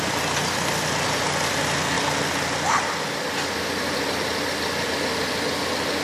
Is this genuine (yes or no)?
yes